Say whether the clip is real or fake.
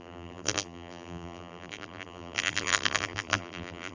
fake